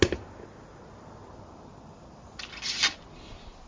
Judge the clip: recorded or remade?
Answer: recorded